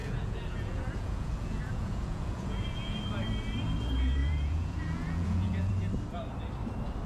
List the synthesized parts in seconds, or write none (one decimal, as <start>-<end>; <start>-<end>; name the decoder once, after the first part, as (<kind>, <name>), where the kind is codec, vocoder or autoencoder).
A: 0.0-3.0 (vocoder, Vocos); 4.2-5.7